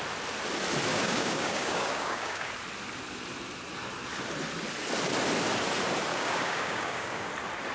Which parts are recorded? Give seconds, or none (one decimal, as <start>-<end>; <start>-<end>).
0.0-0.9; 2.5-6.1; 7.3-7.7